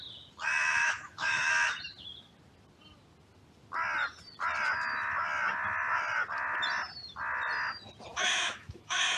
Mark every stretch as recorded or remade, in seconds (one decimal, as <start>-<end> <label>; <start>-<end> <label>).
0.0-0.8 recorded; 0.8-1.5 remade; 1.5-8.1 recorded; 8.1-9.2 remade